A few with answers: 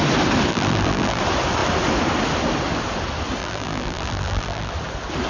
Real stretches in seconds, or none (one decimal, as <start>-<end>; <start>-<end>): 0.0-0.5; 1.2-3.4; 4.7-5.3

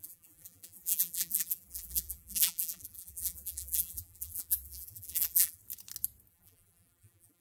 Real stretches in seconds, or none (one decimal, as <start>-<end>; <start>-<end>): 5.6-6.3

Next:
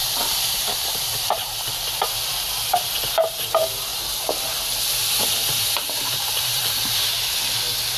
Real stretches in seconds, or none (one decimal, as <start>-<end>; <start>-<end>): 1.6-3.9; 4.4-5.0; 7.1-8.0

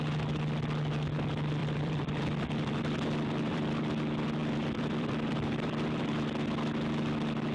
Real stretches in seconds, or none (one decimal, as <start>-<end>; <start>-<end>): 0.0-1.6; 3.9-4.4; 6.1-7.5